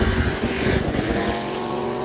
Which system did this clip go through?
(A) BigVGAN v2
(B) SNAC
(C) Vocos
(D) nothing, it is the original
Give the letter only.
C